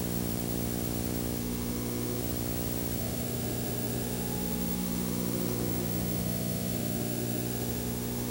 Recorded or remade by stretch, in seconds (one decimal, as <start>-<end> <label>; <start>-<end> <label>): 0.0-1.4 recorded; 1.4-2.2 remade; 2.2-3.0 recorded; 3.0-8.3 remade